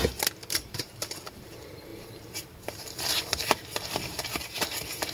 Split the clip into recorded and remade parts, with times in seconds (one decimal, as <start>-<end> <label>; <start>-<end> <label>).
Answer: 0.0-0.5 recorded; 0.5-5.1 remade